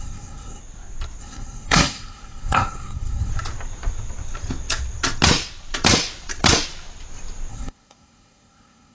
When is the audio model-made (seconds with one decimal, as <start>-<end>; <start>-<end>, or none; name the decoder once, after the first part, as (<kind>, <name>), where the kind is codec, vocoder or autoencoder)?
0.0-0.6 (codec, SNAC); 1.2-3.3; 7.5-8.9